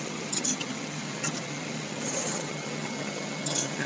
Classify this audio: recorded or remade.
remade